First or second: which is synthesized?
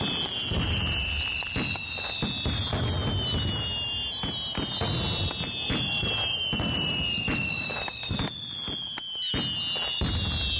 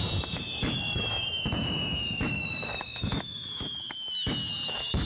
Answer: second